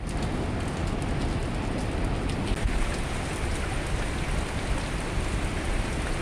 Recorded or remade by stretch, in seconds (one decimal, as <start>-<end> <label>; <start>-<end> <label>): 0.0-6.2 recorded

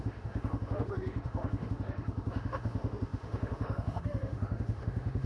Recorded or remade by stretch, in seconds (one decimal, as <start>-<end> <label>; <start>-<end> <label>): 0.0-5.3 remade

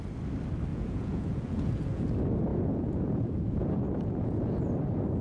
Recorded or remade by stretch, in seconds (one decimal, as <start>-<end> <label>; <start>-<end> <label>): 0.0-0.7 recorded; 0.7-2.1 remade; 2.1-2.5 recorded; 2.5-4.6 remade; 4.6-5.2 recorded

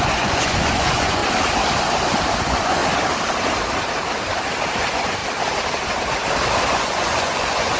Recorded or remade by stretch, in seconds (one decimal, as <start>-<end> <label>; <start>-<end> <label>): 0.0-1.2 remade; 1.2-2.4 recorded; 2.4-2.8 remade; 2.8-4.8 recorded; 4.8-5.2 remade; 5.2-6.7 recorded; 6.7-7.8 remade

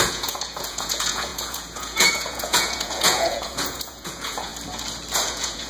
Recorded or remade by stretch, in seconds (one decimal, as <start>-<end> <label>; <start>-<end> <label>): 0.0-4.5 remade; 4.5-5.3 recorded; 5.3-5.7 remade